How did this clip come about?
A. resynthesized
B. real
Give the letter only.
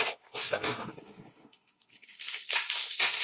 A